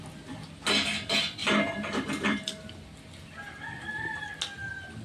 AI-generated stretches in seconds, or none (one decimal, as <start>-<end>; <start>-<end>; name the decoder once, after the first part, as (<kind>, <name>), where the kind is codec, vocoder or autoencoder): 1.4-4.4 (vocoder, BigVGAN v2)